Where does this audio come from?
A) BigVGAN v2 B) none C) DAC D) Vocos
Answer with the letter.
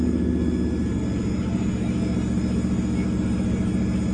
B